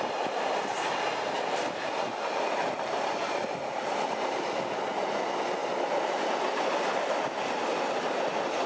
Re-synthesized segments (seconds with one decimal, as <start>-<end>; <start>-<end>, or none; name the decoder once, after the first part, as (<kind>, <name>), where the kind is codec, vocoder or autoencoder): none

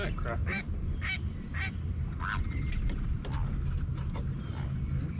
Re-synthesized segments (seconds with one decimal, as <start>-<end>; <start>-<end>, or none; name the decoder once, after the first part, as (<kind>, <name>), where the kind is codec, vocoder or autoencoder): 0.4-3.0 (vocoder, BigVGAN v2)

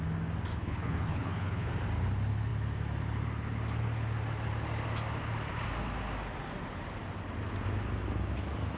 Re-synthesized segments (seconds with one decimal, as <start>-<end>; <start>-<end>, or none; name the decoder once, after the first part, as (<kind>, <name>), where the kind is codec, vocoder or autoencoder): 0.5-1.7 (codec, HILCodec)

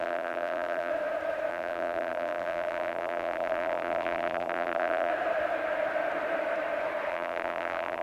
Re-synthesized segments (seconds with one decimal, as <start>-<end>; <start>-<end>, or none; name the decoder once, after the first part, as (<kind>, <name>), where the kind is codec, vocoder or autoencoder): 0.0-0.9 (vocoder, BigVGAN v2); 1.5-5.1; 7.1-8.0

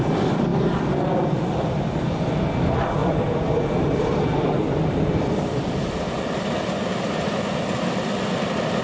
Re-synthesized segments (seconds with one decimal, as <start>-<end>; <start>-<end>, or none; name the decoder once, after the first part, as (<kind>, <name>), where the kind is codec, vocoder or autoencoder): none